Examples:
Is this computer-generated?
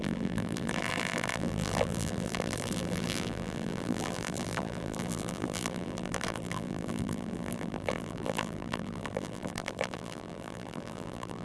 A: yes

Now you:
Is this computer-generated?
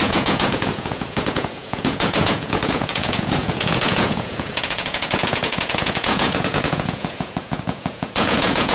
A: yes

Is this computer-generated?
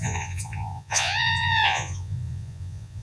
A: yes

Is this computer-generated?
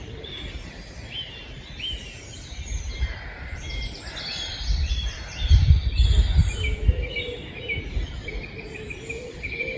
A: no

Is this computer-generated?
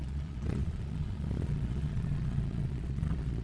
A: yes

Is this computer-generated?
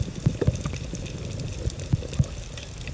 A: no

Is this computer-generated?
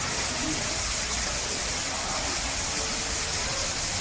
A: no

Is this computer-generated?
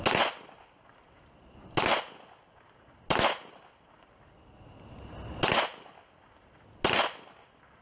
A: no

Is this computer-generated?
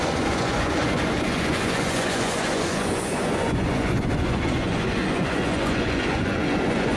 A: yes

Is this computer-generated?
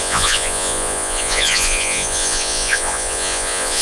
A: yes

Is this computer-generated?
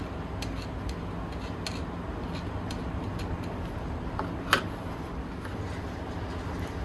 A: no